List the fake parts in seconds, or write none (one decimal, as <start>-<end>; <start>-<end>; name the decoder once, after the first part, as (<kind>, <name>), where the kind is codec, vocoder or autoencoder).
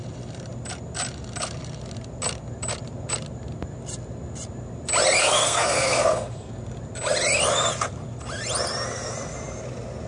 5.2-6.5 (codec, SNAC)